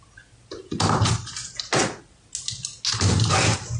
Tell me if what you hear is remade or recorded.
recorded